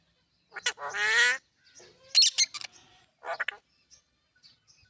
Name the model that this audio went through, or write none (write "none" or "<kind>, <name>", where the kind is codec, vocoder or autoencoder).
none